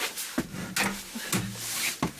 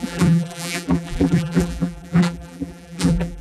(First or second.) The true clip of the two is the first